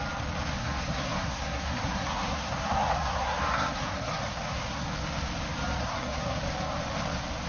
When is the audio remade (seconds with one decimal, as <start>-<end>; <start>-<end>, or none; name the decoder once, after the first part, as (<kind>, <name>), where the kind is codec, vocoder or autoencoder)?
0.6-4.9 (codec, SNAC); 5.8-6.4